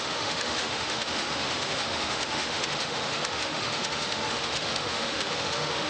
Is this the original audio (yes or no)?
no